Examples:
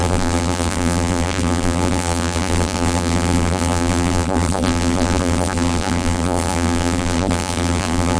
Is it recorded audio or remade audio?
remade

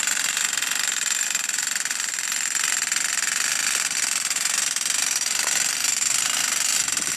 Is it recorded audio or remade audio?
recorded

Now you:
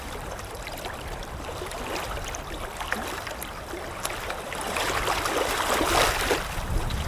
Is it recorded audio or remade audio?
remade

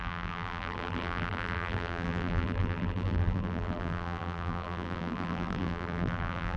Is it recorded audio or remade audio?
remade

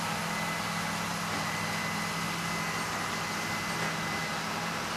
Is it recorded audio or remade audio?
recorded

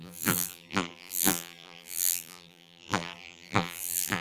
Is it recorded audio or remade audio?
remade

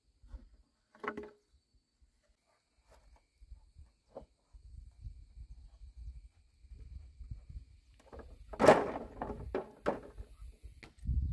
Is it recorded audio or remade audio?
recorded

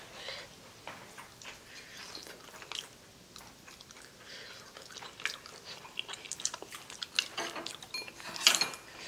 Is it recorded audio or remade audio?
recorded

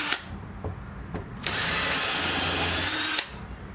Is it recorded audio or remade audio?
remade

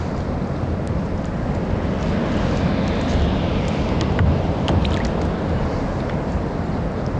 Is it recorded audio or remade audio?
recorded